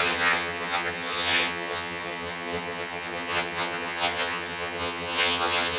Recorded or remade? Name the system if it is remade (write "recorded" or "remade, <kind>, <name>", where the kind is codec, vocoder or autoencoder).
remade, vocoder, HiFi-GAN